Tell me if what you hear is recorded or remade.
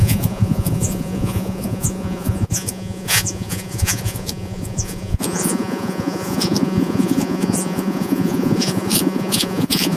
remade